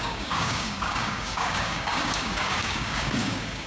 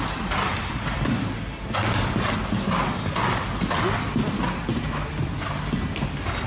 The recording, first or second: second